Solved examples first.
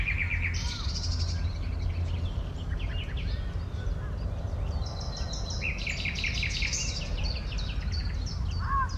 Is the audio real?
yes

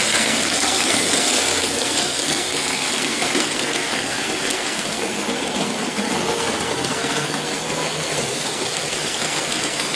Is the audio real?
no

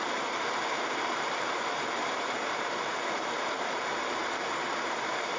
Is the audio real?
no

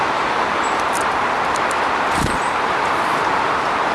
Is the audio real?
no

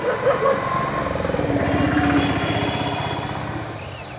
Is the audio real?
yes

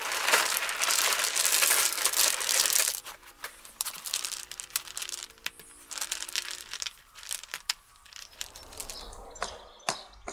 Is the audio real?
no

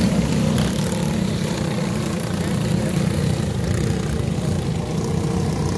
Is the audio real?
yes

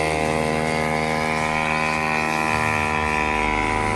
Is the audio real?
yes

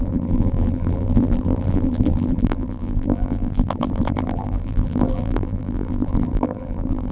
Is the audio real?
no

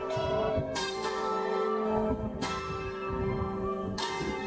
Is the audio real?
no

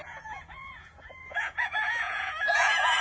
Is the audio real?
no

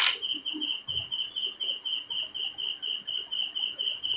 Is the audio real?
yes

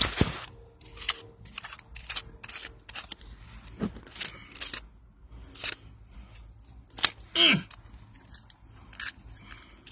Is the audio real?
yes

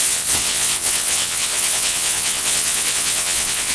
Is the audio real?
no